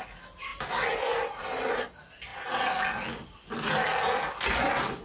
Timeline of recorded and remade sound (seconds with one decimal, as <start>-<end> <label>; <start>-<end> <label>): 0.0-5.0 recorded